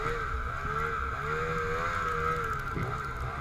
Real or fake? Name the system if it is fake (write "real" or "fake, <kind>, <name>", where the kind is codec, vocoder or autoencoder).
real